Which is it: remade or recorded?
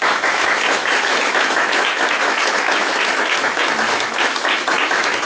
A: remade